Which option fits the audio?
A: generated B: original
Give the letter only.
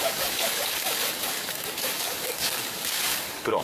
A